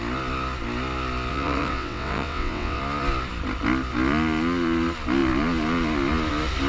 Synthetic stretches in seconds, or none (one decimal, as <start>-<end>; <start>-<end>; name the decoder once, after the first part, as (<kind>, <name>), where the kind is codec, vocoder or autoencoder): 1.3-2.8 (vocoder, WaveNeXt)